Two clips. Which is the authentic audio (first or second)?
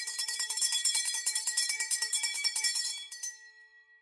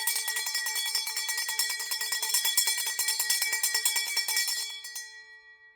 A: second